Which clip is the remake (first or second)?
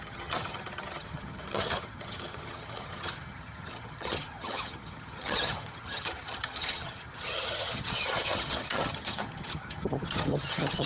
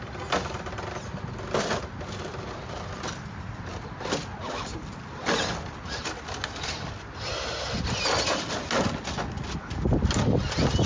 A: first